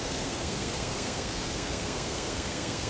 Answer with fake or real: fake